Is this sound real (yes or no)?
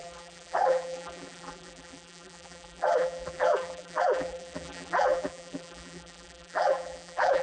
no